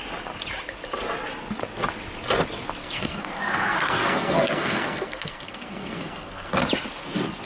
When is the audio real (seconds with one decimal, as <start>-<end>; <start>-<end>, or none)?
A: 0.0-2.8; 6.6-7.5